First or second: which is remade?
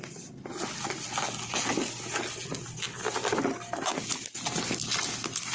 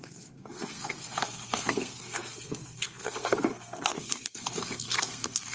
second